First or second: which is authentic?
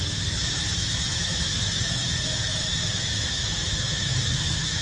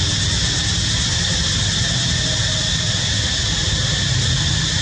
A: second